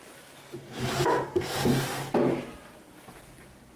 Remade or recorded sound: recorded